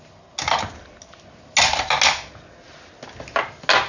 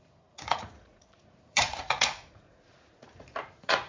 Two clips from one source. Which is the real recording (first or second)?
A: first